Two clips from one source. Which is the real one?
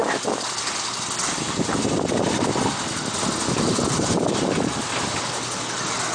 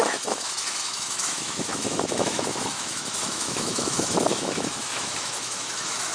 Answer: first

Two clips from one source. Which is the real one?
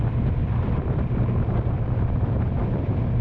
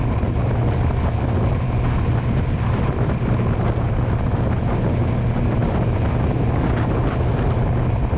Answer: second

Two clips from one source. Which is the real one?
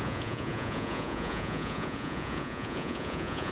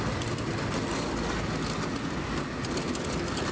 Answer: second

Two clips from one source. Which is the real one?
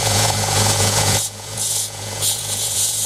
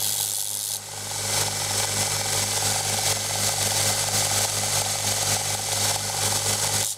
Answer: second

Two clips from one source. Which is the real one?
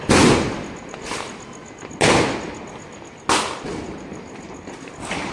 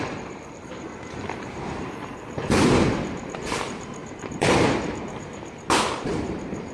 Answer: first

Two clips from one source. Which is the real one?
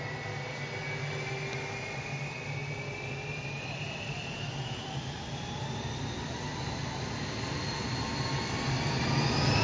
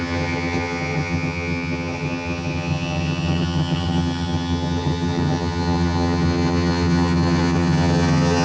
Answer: first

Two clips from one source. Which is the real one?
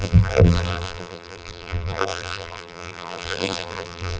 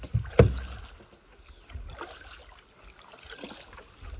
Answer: second